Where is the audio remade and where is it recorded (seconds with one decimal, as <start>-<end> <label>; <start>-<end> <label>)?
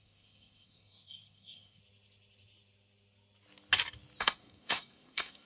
0.0-1.8 remade; 1.8-4.2 recorded; 4.2-5.4 remade